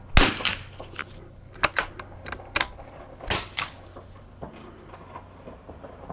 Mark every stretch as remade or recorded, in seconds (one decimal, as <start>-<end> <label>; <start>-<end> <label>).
0.0-6.1 recorded